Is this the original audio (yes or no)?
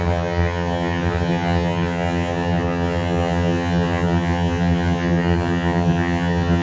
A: no